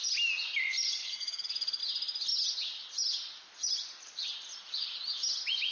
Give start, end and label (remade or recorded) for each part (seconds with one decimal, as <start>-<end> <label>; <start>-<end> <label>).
0.0-1.0 recorded; 1.0-1.8 remade; 1.8-5.7 recorded